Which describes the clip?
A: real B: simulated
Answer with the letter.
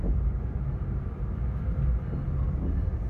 A